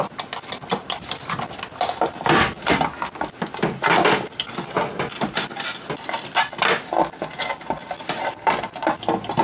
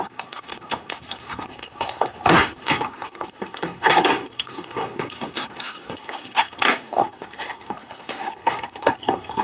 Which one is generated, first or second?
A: second